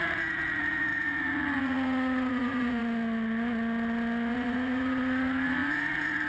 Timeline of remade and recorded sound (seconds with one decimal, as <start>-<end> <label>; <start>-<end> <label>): 0.0-2.8 remade; 2.8-4.3 recorded; 4.3-6.3 remade